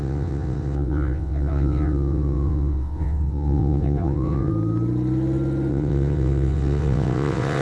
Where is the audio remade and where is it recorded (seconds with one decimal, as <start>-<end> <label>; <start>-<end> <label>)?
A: 0.0-4.5 remade; 4.5-5.7 recorded; 5.7-7.6 remade

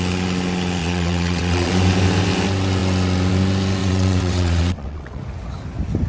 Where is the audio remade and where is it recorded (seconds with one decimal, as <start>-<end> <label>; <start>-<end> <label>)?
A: 0.0-0.8 recorded; 0.8-1.7 remade; 1.7-3.8 recorded; 3.8-5.2 remade; 5.2-6.1 recorded

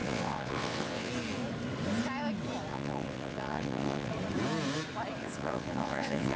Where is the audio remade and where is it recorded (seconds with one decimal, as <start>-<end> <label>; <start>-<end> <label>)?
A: 0.0-1.1 remade; 1.1-2.7 recorded; 2.7-4.1 remade; 4.1-5.2 recorded; 5.2-6.4 remade

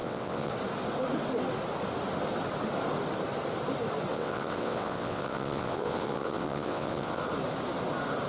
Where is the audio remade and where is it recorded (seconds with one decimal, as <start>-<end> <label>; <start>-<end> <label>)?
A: 0.0-0.5 remade; 0.5-4.1 recorded; 4.1-7.2 remade; 7.2-8.3 recorded

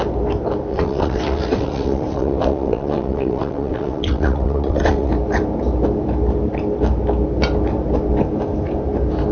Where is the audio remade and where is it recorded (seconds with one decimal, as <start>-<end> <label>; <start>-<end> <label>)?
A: 0.0-0.7 recorded; 0.7-5.1 remade; 5.1-9.3 recorded

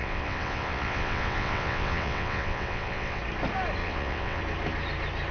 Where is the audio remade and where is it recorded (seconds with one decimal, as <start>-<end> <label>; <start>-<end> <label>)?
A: 0.0-3.2 remade; 3.2-3.8 recorded; 3.8-4.4 remade; 4.4-5.3 recorded

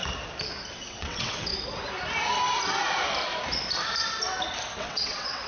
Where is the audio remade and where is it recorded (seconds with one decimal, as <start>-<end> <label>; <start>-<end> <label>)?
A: 0.0-0.7 recorded; 0.7-1.5 remade; 1.5-4.8 recorded; 4.8-5.5 remade